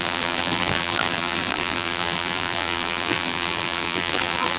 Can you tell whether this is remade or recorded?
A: remade